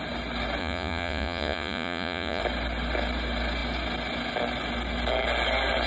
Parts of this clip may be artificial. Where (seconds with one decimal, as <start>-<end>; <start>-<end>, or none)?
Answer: 0.6-2.4